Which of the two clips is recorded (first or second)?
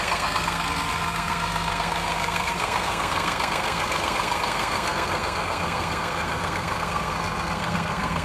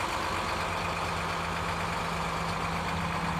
second